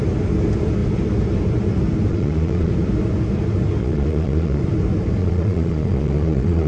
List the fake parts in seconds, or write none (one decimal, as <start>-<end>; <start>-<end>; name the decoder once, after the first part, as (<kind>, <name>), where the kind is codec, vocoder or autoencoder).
2.1-2.7 (vocoder, Vocos); 3.8-4.6; 5.2-6.7